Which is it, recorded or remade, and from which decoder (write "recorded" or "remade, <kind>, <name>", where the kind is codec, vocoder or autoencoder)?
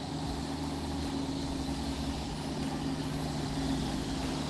recorded